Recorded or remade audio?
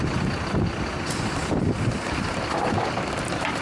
recorded